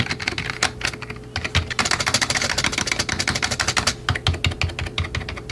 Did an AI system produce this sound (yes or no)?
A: no